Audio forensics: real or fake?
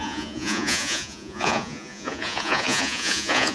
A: fake